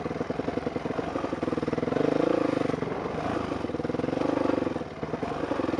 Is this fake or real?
real